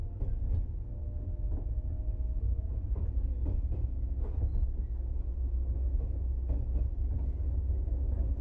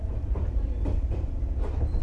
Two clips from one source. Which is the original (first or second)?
first